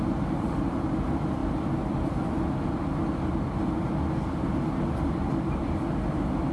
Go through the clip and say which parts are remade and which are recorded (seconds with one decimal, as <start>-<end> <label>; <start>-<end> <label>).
0.0-6.5 recorded